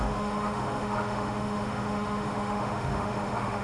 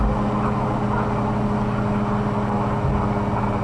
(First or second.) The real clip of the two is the second